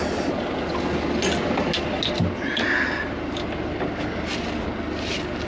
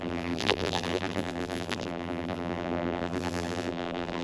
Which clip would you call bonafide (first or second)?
first